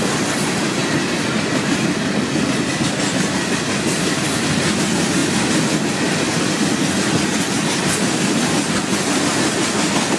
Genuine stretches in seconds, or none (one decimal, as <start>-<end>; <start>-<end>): 0.0-10.2

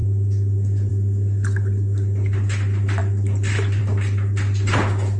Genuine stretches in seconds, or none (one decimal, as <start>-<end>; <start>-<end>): 0.0-5.2

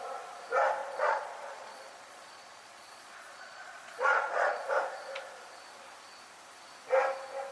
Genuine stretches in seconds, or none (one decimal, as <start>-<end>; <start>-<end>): 0.0-0.8; 4.7-7.5

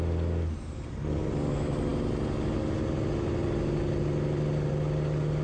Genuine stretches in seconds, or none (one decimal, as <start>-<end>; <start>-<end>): 0.0-5.4

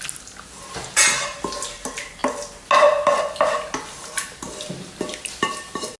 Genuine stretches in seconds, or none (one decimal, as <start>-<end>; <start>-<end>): 0.0-6.0

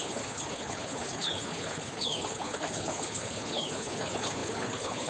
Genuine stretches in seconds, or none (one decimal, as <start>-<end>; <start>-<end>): none